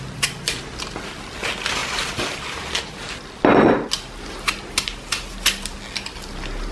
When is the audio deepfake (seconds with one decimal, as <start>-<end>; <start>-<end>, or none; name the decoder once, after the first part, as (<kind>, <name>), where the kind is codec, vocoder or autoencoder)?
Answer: none